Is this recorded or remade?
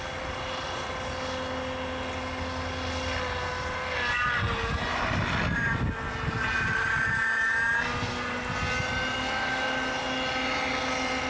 recorded